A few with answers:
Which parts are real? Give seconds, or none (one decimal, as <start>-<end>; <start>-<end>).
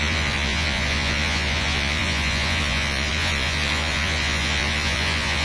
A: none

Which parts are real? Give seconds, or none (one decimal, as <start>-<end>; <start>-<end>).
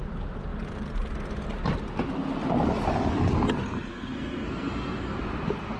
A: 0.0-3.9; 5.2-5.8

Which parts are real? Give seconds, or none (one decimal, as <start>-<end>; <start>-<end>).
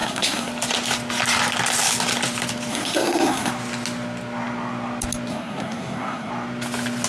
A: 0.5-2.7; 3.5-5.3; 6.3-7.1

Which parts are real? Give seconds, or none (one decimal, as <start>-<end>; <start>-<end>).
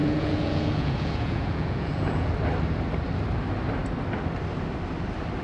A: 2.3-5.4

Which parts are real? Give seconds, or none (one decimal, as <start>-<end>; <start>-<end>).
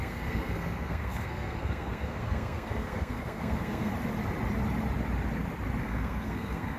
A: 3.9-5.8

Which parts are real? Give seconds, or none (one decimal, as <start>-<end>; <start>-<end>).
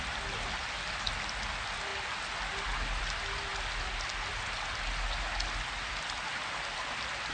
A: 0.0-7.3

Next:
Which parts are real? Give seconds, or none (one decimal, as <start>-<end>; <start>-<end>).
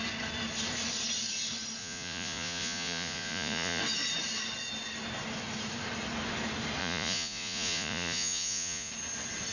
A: 0.0-1.8; 3.8-6.8; 8.9-9.5